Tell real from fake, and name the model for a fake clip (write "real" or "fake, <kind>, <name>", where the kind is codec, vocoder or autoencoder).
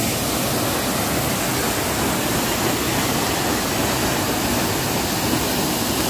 real